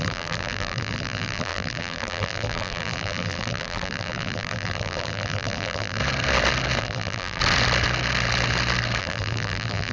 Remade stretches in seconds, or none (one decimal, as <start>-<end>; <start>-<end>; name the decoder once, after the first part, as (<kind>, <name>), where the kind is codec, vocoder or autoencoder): 0.0-6.0 (vocoder, BigVGAN v2); 6.8-7.4; 9.0-9.9